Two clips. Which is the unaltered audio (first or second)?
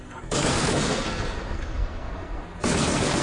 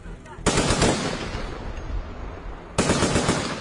second